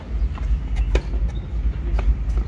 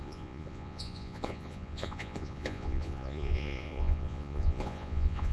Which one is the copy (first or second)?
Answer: second